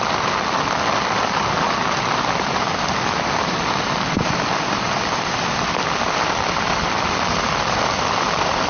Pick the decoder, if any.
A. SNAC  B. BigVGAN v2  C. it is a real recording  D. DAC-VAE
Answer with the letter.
B